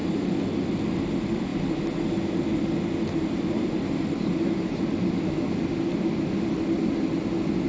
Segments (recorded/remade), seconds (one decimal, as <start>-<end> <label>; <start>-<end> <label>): 0.0-7.7 recorded